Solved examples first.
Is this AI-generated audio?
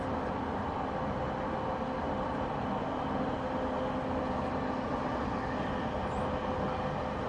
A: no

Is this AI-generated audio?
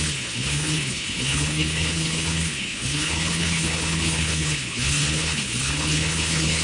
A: yes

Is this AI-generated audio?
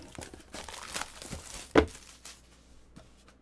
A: no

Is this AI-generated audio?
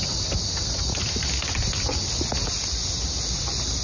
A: no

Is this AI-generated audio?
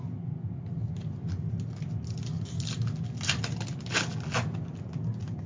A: no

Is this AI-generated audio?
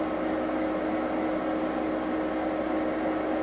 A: no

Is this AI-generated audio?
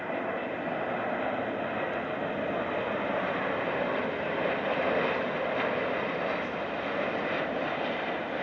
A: no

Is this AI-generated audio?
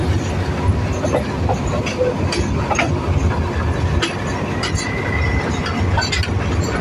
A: no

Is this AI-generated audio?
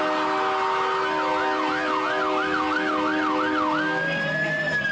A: no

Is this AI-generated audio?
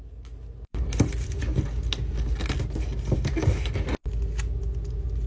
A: no